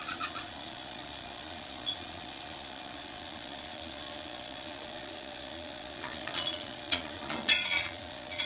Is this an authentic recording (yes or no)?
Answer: no